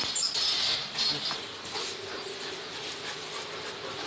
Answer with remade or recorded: recorded